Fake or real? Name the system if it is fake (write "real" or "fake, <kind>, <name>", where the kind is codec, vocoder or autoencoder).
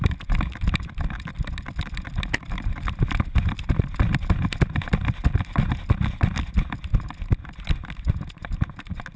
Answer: real